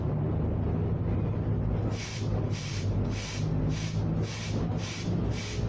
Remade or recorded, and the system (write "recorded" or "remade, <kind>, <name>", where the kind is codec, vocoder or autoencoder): recorded